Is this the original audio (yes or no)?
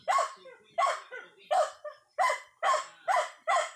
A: yes